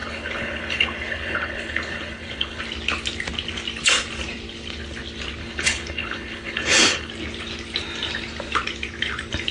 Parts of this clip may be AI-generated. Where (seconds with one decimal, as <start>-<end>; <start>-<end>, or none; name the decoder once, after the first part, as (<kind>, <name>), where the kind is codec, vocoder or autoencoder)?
0.0-2.6 (codec, HILCodec); 5.4-7.1